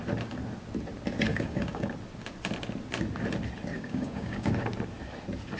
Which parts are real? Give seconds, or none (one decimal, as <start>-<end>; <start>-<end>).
0.0-1.3; 1.9-3.7; 4.5-5.6